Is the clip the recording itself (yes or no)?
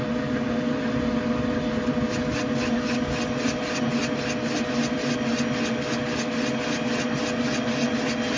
yes